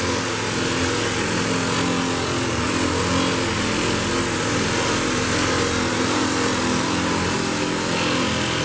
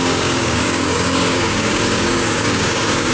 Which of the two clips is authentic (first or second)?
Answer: first